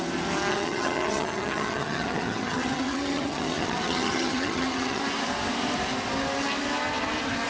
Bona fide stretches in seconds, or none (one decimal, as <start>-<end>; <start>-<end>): 0.0-0.5; 5.0-7.5

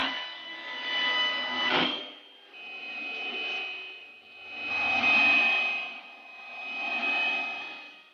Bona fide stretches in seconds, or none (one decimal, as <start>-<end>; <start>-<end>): 2.0-8.1